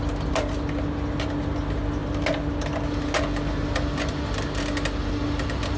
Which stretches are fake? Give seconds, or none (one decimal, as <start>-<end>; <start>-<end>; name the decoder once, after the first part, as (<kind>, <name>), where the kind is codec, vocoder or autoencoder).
none